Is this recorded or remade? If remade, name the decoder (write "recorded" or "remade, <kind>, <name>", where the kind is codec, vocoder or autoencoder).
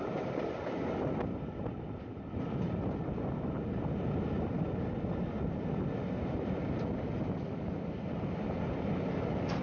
recorded